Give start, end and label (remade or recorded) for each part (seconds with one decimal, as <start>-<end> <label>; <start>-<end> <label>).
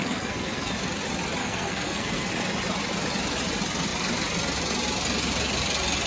0.0-0.7 remade; 0.7-1.4 recorded; 1.4-2.3 remade; 2.3-6.1 recorded